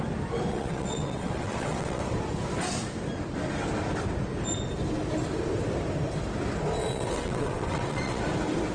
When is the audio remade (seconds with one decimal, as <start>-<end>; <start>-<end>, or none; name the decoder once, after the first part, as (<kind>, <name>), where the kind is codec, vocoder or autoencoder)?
0.5-2.0 (vocoder, WaveNeXt); 6.8-8.2